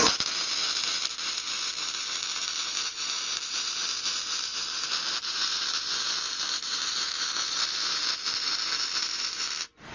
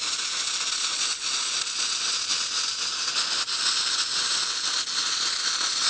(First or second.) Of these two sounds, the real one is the first